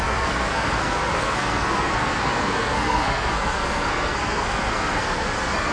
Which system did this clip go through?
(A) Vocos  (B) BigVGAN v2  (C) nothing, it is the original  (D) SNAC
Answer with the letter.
D